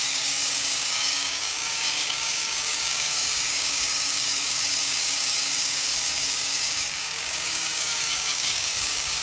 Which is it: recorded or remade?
remade